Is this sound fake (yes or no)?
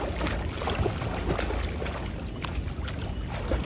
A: no